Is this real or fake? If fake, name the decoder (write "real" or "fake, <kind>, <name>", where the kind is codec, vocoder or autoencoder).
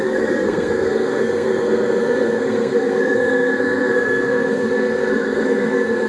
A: fake, codec, SNAC